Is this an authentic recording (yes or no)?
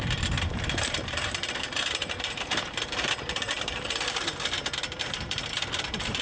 no